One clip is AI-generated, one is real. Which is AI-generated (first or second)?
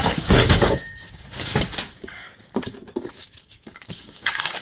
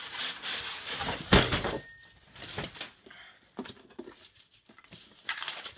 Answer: first